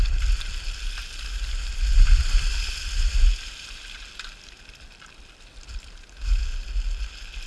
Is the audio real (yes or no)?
yes